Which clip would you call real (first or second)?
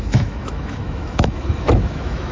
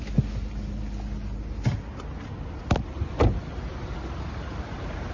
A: second